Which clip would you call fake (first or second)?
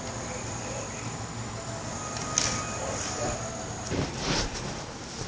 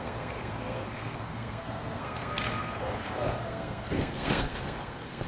second